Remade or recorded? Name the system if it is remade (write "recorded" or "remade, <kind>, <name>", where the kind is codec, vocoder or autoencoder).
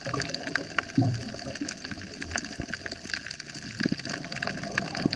remade, vocoder, BigVGAN v2